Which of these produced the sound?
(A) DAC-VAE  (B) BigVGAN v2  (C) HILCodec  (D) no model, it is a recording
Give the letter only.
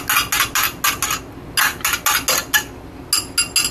D